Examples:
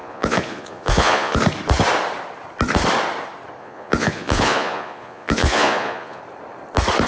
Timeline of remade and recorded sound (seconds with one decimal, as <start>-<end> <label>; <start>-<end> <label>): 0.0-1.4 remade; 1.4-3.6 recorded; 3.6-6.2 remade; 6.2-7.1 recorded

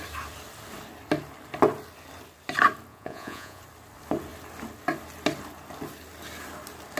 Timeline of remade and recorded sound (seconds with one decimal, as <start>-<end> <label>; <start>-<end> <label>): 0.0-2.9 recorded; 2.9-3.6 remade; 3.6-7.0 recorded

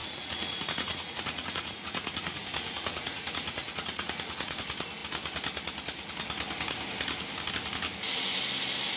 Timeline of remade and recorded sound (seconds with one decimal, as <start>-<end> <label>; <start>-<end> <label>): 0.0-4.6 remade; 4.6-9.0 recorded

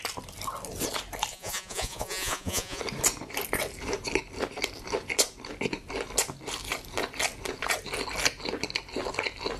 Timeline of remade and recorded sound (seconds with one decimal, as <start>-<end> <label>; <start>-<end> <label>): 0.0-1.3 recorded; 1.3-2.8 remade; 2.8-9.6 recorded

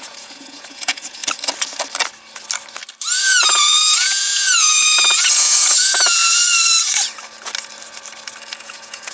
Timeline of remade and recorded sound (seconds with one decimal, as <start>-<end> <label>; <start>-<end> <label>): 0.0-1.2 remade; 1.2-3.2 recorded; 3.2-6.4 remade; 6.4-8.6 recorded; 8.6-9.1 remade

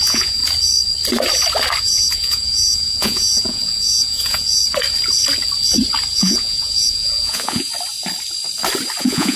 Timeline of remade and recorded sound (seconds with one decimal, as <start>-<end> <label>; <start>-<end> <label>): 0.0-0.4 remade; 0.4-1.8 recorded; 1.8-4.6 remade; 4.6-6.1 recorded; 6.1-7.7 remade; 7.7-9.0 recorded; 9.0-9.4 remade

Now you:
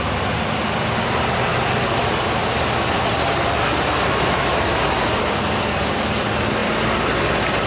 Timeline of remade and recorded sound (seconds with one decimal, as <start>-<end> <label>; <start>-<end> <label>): 0.0-7.7 recorded

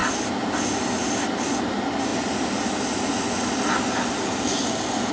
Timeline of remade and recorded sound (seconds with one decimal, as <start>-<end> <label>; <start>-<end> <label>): 0.0-5.1 recorded